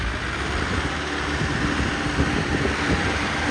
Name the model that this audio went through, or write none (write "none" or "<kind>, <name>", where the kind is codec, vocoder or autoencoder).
none